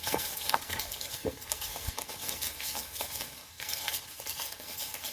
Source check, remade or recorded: remade